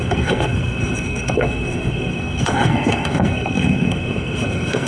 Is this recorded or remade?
remade